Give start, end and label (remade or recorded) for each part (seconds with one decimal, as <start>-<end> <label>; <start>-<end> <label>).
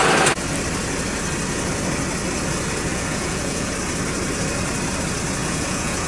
0.0-2.9 recorded; 2.9-3.7 remade; 3.7-5.4 recorded; 5.4-6.1 remade